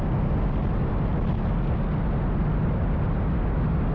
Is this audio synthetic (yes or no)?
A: no